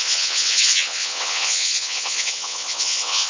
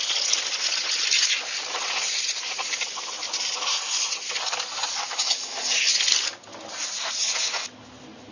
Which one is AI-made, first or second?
first